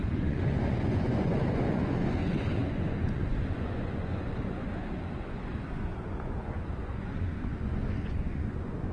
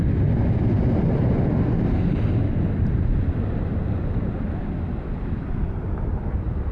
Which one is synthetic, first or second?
first